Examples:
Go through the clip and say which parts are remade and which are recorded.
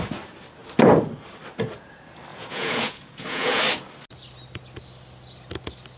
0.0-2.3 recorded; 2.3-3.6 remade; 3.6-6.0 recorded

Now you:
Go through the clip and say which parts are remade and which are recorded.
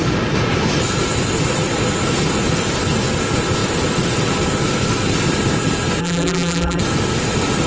0.0-6.0 recorded; 6.0-6.8 remade; 6.8-7.7 recorded